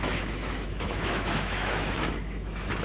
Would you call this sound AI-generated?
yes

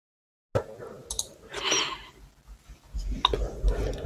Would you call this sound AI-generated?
no